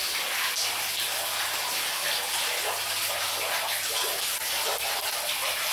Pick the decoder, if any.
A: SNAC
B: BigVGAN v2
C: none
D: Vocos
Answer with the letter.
C